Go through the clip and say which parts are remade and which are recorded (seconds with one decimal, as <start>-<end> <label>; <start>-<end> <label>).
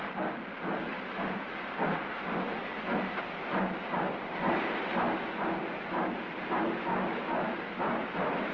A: 0.0-8.5 recorded